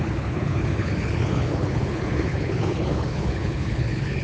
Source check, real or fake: fake